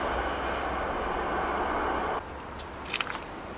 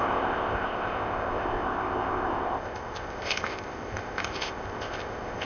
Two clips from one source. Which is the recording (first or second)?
first